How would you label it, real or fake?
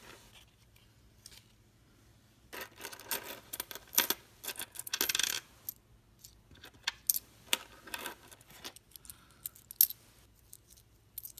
real